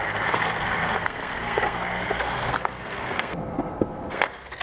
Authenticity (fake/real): fake